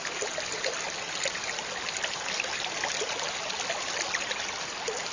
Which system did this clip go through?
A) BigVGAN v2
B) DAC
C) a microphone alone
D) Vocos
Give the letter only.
C